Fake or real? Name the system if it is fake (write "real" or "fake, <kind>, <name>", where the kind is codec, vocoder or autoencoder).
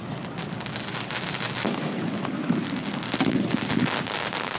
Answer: real